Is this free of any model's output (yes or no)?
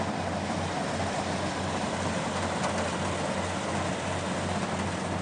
yes